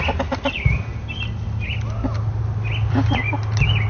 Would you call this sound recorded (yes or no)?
yes